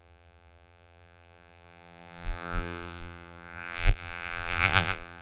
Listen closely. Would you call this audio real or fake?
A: fake